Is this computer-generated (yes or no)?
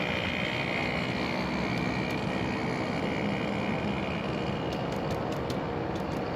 no